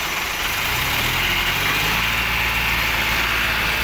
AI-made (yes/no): no